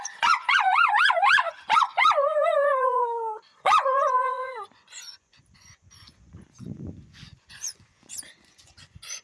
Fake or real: fake